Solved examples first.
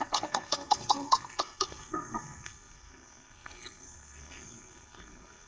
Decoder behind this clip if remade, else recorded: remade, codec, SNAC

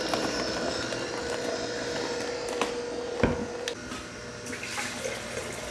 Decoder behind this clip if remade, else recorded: recorded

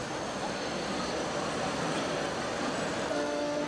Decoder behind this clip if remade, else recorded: recorded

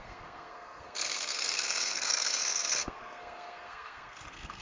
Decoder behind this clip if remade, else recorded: remade, codec, SNAC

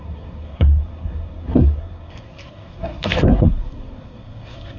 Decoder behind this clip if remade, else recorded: remade, codec, SNAC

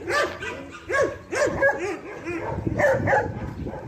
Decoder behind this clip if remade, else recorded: recorded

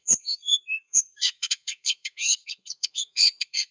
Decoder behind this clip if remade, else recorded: remade, codec, SNAC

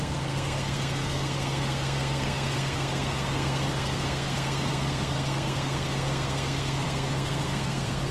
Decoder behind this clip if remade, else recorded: remade, codec, SNAC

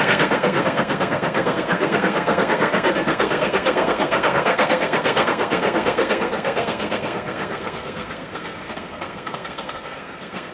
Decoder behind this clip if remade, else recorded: remade, codec, SNAC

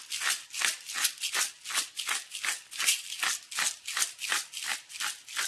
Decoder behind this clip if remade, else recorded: recorded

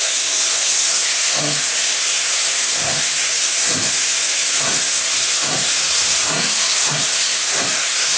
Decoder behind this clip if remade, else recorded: remade, codec, SNAC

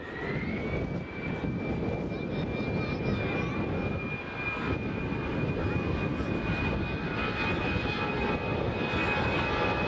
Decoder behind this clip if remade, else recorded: recorded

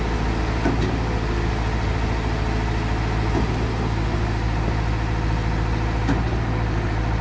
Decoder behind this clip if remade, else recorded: recorded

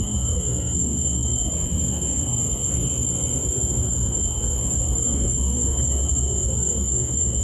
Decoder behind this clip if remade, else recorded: remade, codec, SNAC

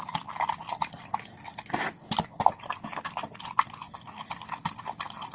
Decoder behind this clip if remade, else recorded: recorded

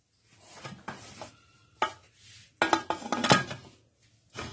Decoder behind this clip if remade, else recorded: recorded